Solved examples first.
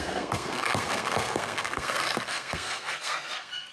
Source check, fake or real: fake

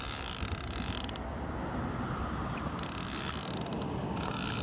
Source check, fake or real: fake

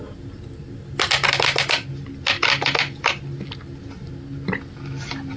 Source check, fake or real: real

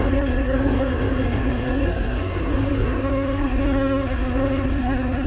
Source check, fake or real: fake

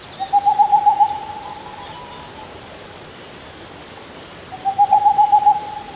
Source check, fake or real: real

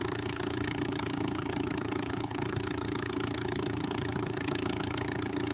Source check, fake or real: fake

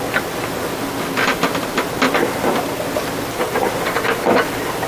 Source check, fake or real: fake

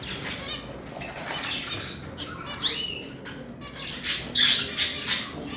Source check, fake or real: real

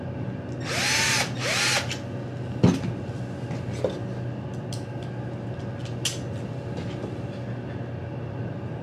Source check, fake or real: real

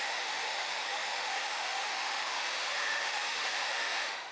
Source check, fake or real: fake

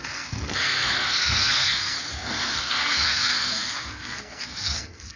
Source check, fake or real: fake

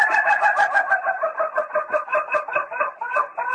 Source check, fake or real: real